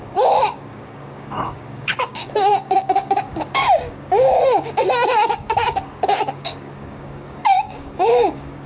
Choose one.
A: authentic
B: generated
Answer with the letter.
B